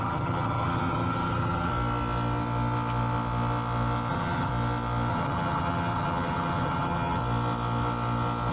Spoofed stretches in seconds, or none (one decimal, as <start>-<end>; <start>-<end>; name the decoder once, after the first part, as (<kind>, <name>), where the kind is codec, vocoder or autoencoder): 0.0-1.7 (vocoder, HiFi-GAN); 4.1-4.5; 5.1-7.2